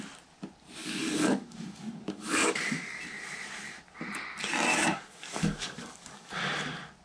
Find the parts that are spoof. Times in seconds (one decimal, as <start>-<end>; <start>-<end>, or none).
0.8-3.0; 4.7-6.3